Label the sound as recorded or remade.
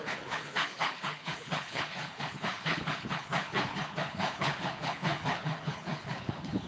remade